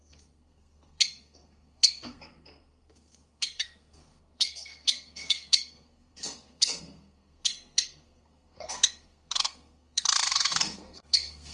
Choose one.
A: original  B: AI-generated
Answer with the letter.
B